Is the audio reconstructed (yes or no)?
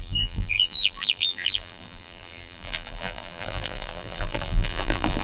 yes